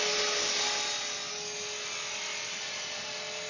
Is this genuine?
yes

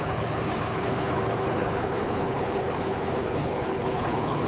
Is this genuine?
no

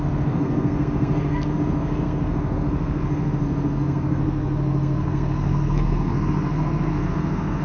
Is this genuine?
no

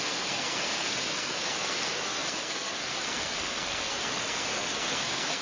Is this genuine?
no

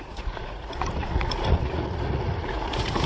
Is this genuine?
no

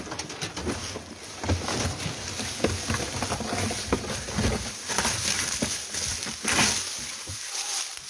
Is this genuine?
yes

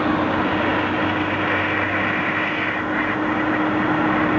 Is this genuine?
yes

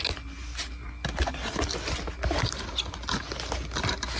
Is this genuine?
yes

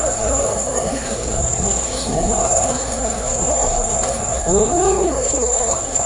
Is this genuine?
no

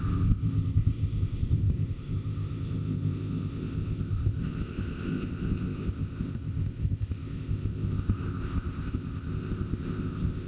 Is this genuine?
no